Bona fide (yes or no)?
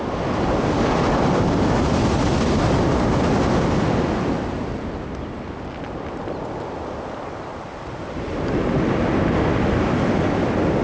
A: yes